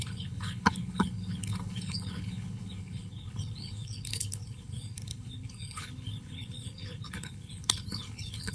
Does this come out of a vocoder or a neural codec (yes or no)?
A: yes